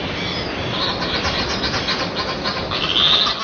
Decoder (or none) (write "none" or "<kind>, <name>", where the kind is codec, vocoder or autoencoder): none